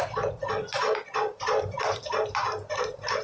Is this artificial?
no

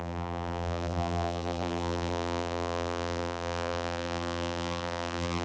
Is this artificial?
yes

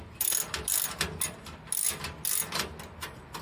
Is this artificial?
no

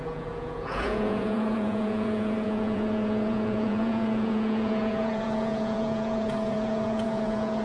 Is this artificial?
yes